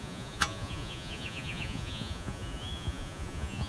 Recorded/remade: remade